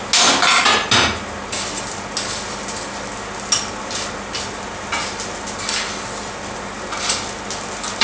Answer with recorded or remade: recorded